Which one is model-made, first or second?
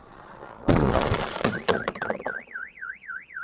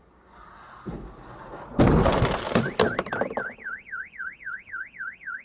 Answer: first